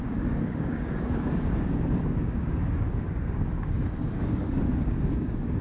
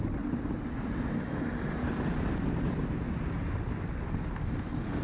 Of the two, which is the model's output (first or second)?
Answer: first